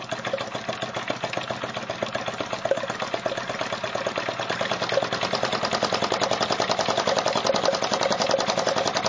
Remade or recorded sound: recorded